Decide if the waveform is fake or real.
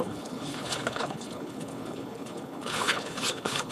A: fake